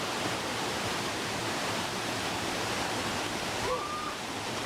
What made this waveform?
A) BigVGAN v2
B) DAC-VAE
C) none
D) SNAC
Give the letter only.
A